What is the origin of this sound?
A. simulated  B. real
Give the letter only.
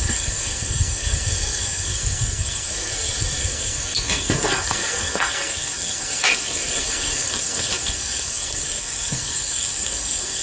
A